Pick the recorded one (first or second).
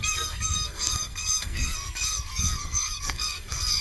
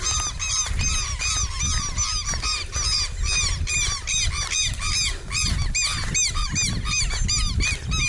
second